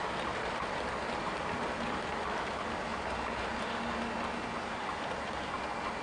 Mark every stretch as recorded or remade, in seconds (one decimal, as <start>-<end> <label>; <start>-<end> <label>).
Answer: 0.0-2.9 recorded; 2.9-3.6 remade; 3.6-6.0 recorded